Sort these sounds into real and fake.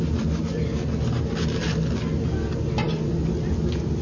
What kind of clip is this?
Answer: real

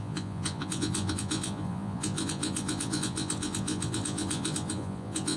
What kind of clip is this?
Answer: fake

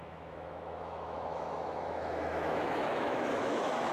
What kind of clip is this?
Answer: fake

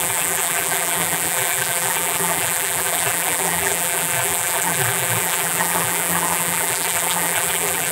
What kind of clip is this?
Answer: fake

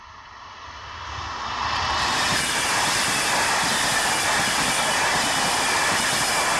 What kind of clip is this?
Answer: real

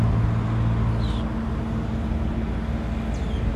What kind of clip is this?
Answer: real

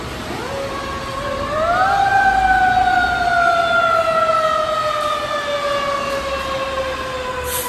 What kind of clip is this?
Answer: real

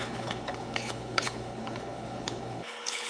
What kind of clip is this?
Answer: fake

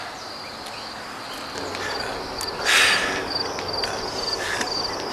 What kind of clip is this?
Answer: real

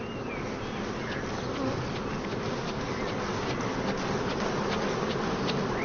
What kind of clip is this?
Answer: real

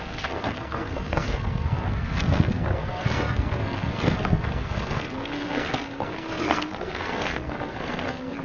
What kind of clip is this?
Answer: fake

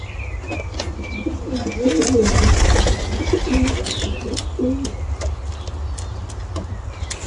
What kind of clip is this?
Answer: real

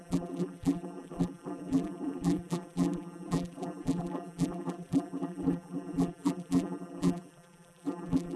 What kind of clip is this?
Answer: fake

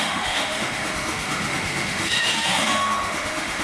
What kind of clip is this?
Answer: fake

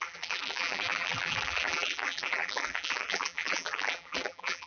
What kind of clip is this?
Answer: fake